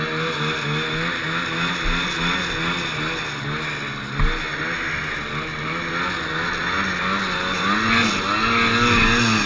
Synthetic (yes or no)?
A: no